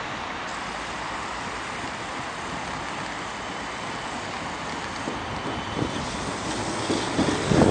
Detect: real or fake real